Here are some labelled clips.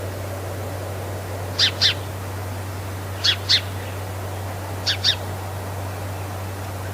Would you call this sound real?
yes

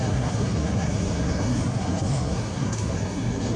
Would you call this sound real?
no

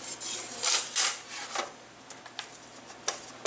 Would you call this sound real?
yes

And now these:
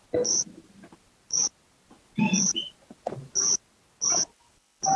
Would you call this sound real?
yes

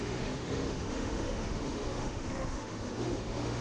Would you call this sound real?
no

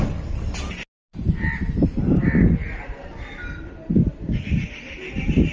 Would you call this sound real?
yes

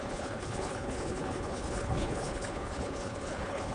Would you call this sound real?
no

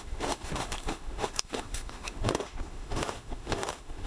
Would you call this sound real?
no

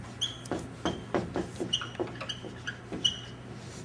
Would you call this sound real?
yes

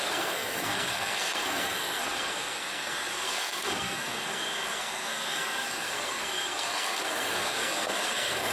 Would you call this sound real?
no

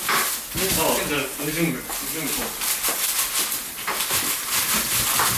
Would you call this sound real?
yes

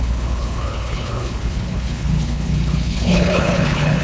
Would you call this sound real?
no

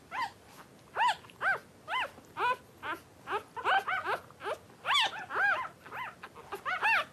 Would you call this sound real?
yes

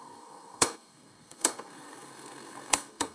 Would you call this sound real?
no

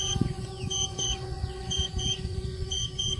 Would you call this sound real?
no